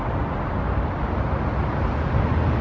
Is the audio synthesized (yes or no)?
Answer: no